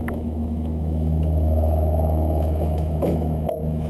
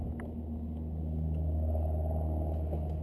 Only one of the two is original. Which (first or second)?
second